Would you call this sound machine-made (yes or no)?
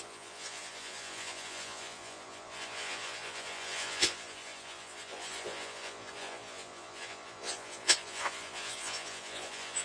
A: yes